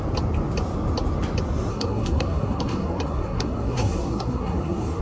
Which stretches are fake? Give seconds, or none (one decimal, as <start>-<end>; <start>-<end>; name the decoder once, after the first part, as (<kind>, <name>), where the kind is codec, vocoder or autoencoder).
1.7-5.0 (codec, SNAC)